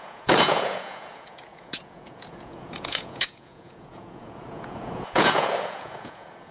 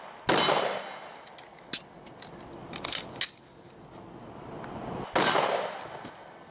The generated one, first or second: first